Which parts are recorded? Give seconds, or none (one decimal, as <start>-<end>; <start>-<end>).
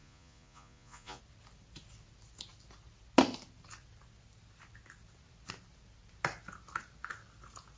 1.2-7.8